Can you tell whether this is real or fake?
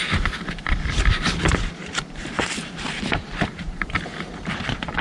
fake